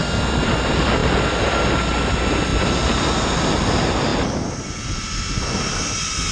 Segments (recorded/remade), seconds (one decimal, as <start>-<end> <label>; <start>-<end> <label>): 0.0-6.3 recorded